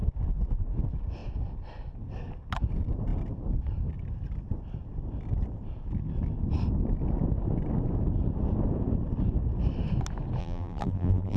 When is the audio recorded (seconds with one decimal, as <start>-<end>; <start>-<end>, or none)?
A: 0.0-10.4